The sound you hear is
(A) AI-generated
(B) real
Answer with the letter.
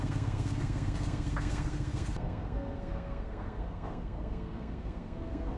A